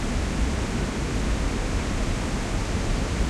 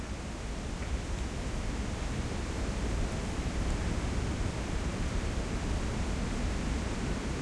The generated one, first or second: second